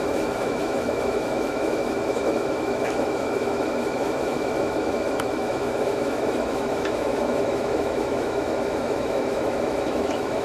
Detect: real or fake fake